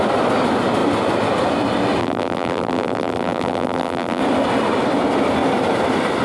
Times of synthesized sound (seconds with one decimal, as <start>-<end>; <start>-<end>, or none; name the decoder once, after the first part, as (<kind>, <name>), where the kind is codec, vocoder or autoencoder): 2.0-4.2 (vocoder, BigVGAN v2)